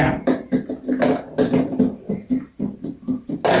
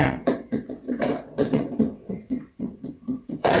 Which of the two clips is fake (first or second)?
second